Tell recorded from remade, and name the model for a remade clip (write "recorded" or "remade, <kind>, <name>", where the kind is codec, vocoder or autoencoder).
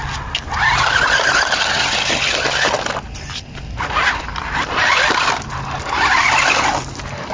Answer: recorded